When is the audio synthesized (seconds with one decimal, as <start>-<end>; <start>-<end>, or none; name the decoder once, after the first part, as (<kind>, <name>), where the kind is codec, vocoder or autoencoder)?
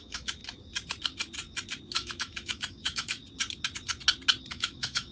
0.0-0.4 (autoencoder, DAC-VAE); 1.9-3.2; 4.5-5.1